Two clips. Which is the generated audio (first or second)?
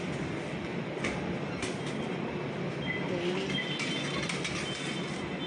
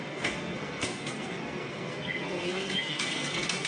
second